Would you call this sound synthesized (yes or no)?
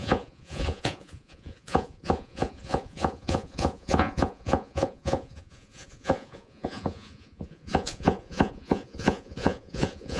yes